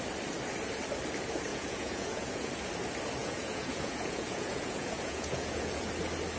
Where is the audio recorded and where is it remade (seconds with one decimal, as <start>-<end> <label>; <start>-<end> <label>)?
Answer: 0.0-1.5 recorded; 1.5-2.5 remade; 2.5-3.2 recorded; 3.2-5.9 remade; 5.9-6.4 recorded